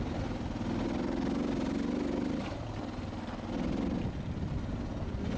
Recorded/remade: recorded